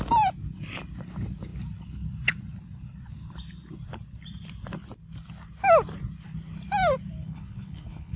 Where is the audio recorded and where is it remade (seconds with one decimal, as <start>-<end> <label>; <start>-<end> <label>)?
0.0-7.2 recorded; 7.2-8.2 remade